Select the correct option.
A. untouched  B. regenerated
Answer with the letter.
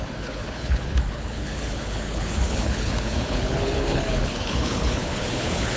B